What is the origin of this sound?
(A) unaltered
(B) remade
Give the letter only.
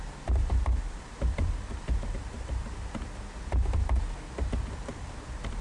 B